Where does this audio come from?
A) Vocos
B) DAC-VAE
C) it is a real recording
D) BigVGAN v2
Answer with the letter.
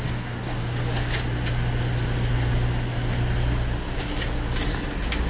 C